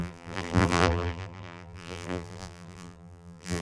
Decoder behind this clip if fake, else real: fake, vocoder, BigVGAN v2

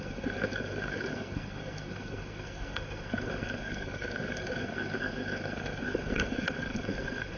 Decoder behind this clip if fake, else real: fake, codec, SNAC